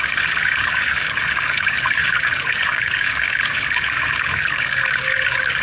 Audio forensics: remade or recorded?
remade